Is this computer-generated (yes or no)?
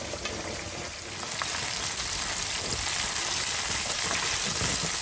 no